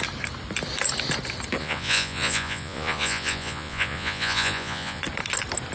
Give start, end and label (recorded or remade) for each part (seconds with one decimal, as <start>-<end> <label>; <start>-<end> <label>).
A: 0.0-1.6 recorded; 1.6-5.0 remade; 5.0-5.7 recorded